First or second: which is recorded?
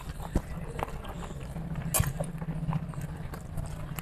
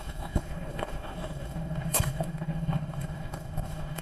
first